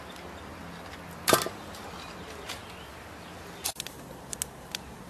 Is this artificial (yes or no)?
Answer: no